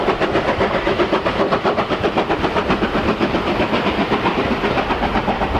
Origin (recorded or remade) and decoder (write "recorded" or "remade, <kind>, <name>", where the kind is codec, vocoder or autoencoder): recorded